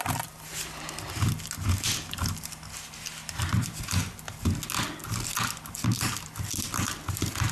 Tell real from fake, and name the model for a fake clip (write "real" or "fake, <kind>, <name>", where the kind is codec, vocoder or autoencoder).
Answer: real